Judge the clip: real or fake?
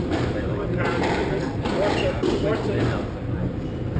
fake